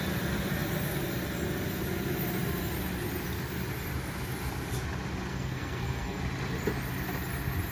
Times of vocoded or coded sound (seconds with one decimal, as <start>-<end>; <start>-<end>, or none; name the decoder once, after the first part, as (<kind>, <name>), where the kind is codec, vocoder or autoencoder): 5.3-6.2 (codec, SNAC)